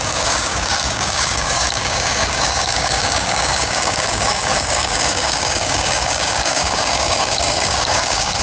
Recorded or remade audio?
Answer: remade